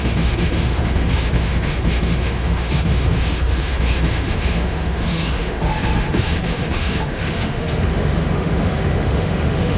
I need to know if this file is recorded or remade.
remade